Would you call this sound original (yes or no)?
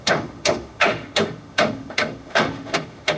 no